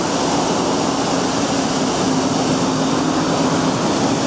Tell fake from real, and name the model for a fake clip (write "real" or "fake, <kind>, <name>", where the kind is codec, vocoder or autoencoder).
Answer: real